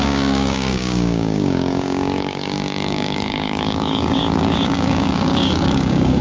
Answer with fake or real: fake